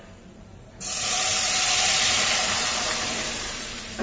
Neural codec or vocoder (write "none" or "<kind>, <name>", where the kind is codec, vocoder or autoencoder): vocoder, BigVGAN v2